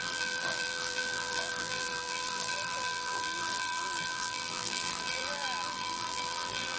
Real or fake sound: fake